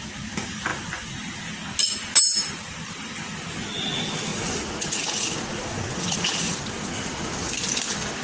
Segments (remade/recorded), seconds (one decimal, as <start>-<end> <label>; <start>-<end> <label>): 0.0-4.3 recorded; 4.3-7.5 remade; 7.5-8.2 recorded